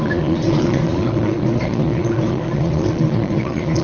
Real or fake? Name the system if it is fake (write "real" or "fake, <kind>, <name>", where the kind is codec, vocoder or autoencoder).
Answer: fake, vocoder, Vocos